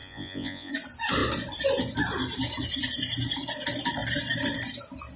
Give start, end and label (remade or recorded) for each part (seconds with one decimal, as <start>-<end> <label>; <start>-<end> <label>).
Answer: 0.0-0.7 remade; 0.7-5.2 recorded